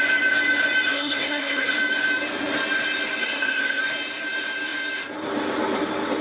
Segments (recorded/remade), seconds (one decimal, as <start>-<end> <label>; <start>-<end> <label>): 0.0-0.9 recorded; 0.9-1.7 remade; 1.7-3.2 recorded; 3.2-3.8 remade; 3.8-6.2 recorded